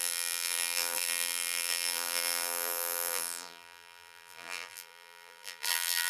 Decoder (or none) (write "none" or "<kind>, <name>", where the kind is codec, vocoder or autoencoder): vocoder, BigVGAN v2